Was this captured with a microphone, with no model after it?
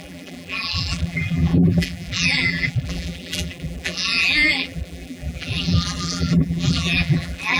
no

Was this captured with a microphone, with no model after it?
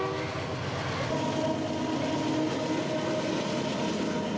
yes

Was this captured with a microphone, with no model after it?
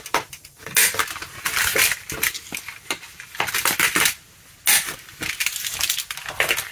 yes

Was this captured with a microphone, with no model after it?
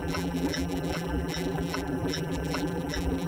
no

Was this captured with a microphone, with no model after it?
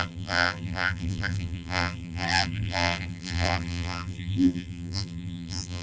no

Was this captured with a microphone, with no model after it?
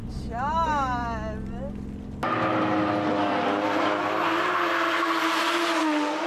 yes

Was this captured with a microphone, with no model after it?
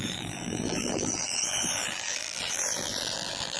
no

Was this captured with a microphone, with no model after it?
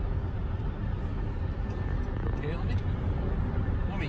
yes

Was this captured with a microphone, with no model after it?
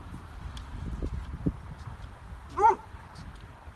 no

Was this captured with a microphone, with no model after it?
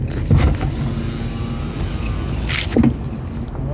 yes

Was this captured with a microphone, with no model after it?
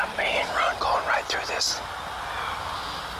yes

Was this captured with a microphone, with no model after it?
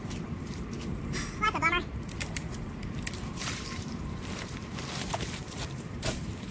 no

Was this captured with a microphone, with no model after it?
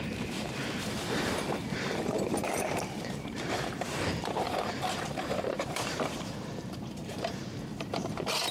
no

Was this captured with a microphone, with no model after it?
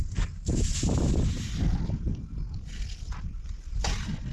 yes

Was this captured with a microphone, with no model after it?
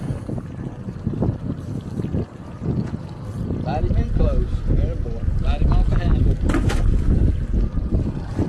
yes